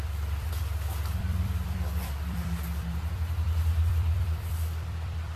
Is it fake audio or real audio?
fake